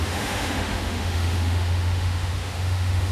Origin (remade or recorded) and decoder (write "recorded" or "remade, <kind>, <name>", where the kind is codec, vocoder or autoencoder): remade, autoencoder, DAC-VAE